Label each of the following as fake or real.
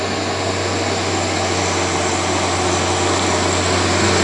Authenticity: real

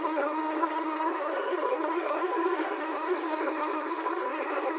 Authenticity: fake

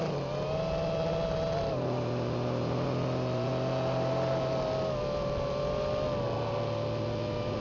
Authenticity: real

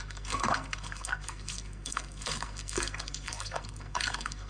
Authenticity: fake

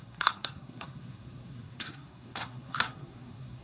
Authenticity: fake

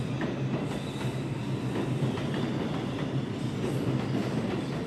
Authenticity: real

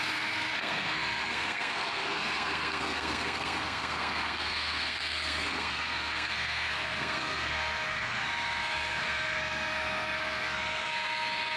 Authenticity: fake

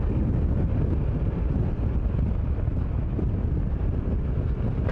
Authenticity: real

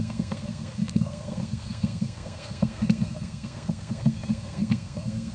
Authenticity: fake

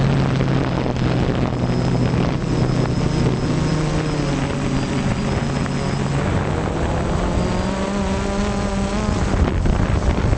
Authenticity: real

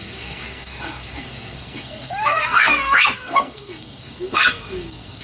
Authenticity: fake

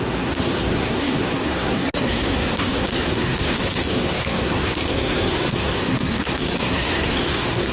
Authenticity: fake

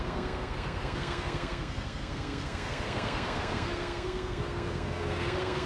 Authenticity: fake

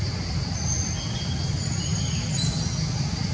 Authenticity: real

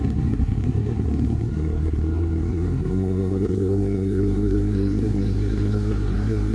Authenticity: fake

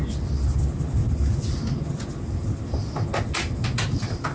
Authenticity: real